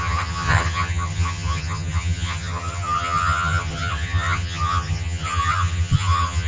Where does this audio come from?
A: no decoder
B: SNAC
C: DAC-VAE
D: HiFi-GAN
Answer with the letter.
D